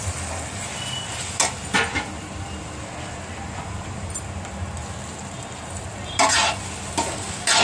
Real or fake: real